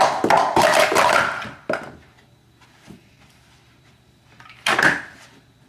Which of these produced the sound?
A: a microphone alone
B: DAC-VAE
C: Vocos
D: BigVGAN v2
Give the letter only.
D